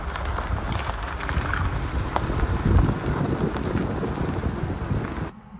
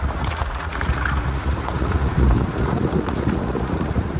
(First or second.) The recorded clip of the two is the first